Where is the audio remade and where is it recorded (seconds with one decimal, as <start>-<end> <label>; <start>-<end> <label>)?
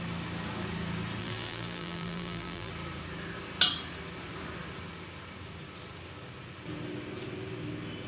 0.0-1.2 recorded; 1.2-2.7 remade; 2.7-8.1 recorded